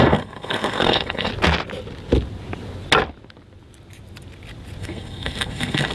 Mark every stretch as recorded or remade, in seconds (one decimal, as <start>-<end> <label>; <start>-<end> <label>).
0.0-1.3 remade; 1.3-4.8 recorded; 4.8-5.9 remade